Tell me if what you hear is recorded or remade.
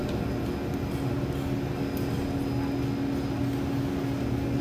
recorded